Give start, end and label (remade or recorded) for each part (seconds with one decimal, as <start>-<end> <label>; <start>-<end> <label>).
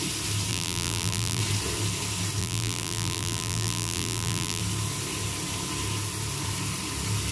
0.0-0.5 recorded; 0.5-1.4 remade; 1.4-2.4 recorded; 2.4-4.6 remade; 4.6-7.3 recorded